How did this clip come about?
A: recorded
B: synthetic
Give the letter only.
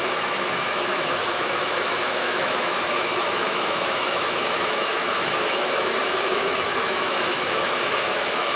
B